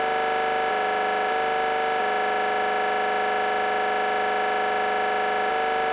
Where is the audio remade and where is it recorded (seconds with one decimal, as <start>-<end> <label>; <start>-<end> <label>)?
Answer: 0.0-0.7 remade; 0.7-1.3 recorded; 1.3-2.0 remade; 2.0-5.5 recorded; 5.5-5.9 remade